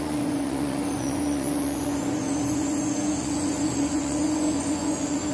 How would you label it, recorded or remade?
remade